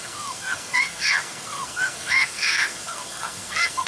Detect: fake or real fake